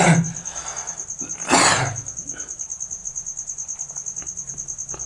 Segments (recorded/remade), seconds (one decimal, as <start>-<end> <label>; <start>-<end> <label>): 0.0-5.1 recorded